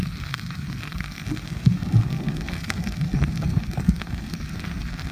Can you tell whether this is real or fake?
fake